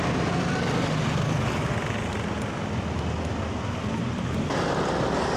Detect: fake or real real